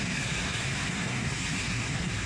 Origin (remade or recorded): remade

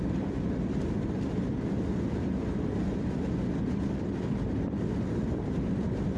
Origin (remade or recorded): recorded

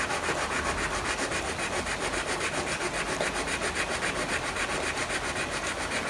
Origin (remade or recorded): recorded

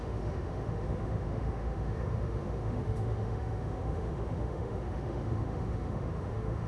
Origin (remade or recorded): remade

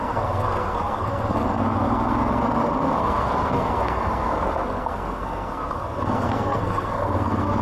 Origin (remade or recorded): remade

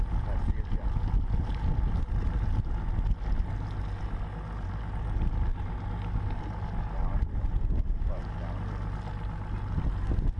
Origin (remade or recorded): recorded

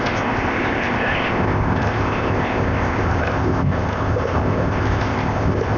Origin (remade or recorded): remade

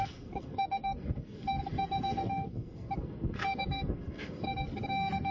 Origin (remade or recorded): remade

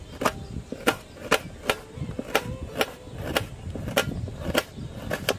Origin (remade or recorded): recorded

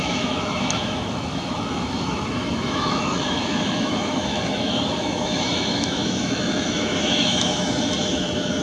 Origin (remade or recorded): remade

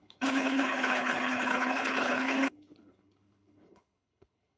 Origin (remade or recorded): remade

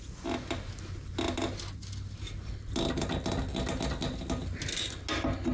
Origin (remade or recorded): recorded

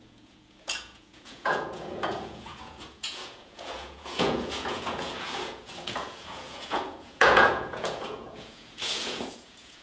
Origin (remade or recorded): remade